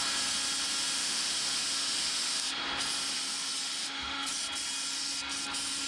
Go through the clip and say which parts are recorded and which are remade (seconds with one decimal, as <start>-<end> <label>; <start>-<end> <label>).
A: 0.0-1.0 recorded; 1.0-2.5 remade; 2.5-3.8 recorded; 3.8-4.3 remade; 4.3-5.9 recorded